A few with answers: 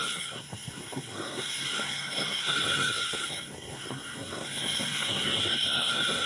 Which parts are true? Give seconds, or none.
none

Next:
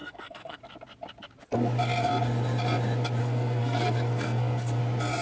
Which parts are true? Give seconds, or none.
0.6-3.2; 4.8-5.2

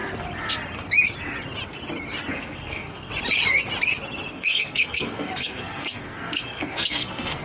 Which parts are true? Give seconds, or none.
0.0-2.3; 3.1-4.3

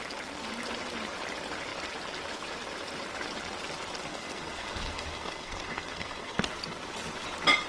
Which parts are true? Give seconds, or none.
0.0-4.1; 6.4-7.7

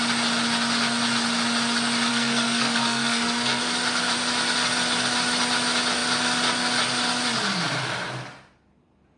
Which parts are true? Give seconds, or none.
0.0-2.1; 3.6-9.2

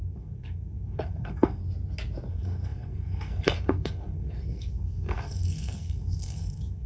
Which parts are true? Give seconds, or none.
1.6-2.3

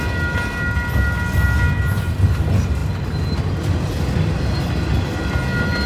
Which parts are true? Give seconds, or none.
0.0-5.9

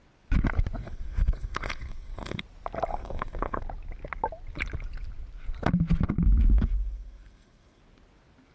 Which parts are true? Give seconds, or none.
0.0-0.8; 2.4-2.9; 3.6-6.5; 7.8-8.5